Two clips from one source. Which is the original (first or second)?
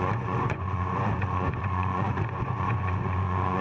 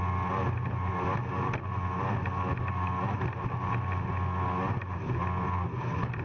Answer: second